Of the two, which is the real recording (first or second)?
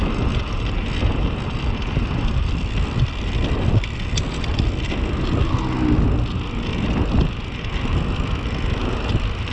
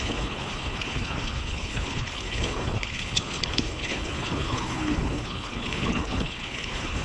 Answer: first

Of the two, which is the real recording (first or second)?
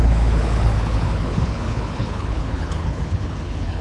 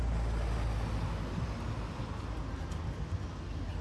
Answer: second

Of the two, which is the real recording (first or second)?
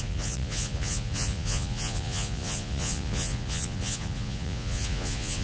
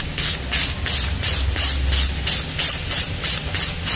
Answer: second